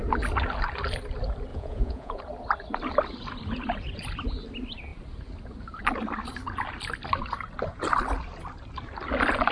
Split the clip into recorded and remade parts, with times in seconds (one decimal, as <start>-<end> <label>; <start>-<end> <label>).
0.0-1.5 recorded; 1.5-2.2 remade; 2.2-9.5 recorded